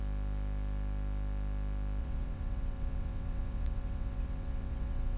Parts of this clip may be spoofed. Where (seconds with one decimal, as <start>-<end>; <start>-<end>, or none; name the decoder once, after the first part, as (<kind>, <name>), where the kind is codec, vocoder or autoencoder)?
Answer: 2.0-5.2 (vocoder, WaveNeXt)

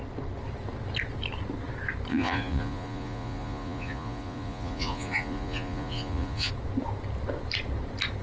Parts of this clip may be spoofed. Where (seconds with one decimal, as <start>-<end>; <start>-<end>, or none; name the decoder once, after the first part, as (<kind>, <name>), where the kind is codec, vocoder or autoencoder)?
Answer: 2.1-6.5 (vocoder, Vocos)